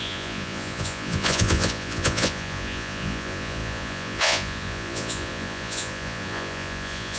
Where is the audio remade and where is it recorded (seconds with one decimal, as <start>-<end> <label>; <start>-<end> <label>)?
0.0-7.2 remade